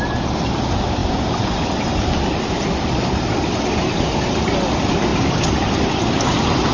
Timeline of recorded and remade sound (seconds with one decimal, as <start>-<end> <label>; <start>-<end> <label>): 0.0-6.7 recorded